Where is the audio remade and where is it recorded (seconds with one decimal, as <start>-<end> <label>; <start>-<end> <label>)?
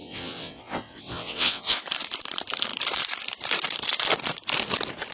0.0-1.8 remade; 1.8-5.1 recorded